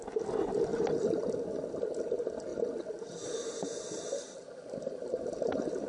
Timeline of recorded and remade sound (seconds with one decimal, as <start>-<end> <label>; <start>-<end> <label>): 0.0-5.9 recorded